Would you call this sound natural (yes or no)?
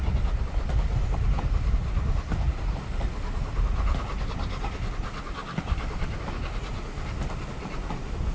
yes